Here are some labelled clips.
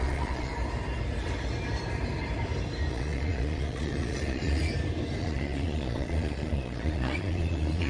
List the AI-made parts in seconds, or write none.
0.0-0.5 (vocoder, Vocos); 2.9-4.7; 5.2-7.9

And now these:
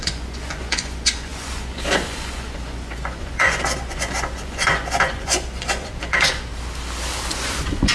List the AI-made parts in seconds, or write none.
0.0-6.5 (vocoder, Vocos); 7.3-7.9

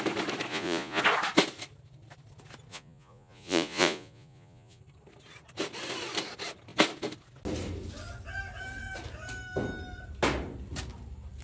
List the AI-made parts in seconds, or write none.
0.5-1.0 (vocoder, Vocos); 2.7-4.8

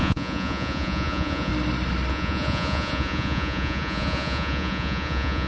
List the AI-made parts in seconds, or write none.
0.0-1.5 (vocoder, Vocos); 2.1-5.5

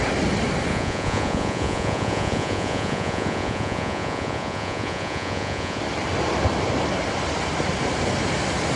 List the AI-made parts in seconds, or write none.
0.7-5.8 (vocoder, Vocos)

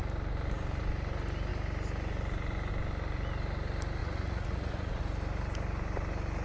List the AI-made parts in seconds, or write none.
4.0-5.0 (vocoder, Vocos)

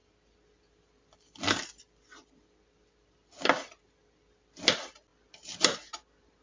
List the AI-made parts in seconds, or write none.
none

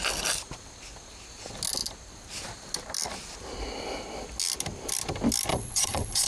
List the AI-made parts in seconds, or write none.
5.5-6.3 (vocoder, Vocos)